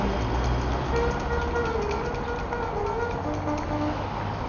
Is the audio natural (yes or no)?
yes